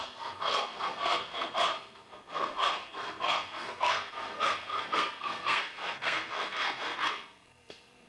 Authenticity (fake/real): fake